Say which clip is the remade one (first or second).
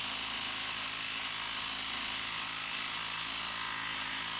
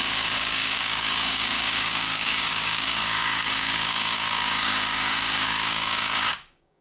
second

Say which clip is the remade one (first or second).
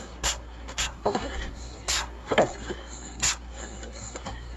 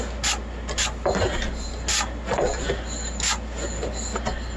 first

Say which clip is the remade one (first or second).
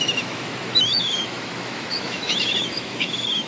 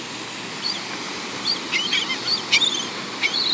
first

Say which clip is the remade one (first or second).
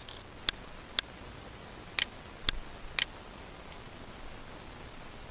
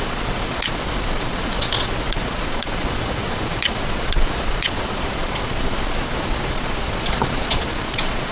second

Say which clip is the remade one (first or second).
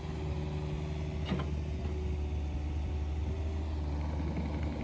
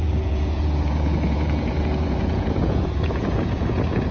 second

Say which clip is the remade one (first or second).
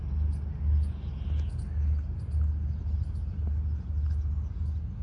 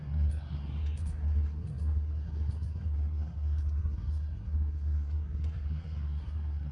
second